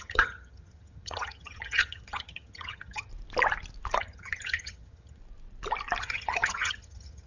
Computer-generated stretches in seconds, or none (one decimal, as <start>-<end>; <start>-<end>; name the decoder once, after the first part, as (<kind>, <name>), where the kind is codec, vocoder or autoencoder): 0.0-3.1 (vocoder, HiFi-GAN); 4.0-5.2; 6.0-7.3